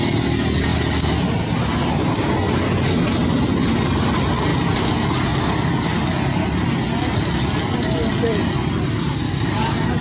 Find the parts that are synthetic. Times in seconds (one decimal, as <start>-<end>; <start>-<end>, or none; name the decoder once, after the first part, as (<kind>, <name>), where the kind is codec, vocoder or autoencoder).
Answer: none